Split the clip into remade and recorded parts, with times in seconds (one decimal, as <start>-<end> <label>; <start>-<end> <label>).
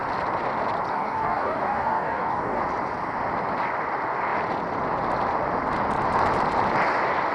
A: 0.0-0.9 recorded; 0.9-2.6 remade; 2.6-7.3 recorded